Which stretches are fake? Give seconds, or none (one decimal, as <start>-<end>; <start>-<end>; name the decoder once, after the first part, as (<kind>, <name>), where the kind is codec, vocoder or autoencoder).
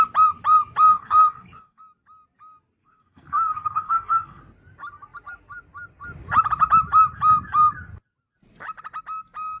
0.9-1.8 (codec, SNAC); 2.8-4.4